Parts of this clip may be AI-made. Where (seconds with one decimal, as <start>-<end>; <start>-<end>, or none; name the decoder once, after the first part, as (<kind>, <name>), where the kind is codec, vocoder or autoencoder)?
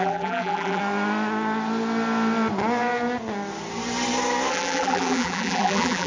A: 0.0-0.8 (vocoder, BigVGAN v2); 4.5-6.1